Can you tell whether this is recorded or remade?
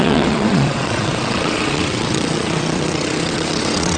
remade